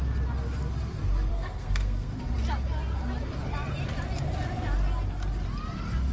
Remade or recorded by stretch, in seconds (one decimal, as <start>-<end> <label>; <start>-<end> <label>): 0.0-1.3 recorded; 1.3-2.2 remade; 2.2-6.1 recorded